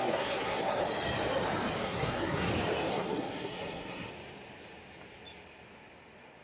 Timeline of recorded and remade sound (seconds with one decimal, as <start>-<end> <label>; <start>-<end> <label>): 0.0-0.8 remade; 0.8-1.8 recorded; 1.8-2.5 remade; 2.5-2.9 recorded; 2.9-4.1 remade; 4.1-6.4 recorded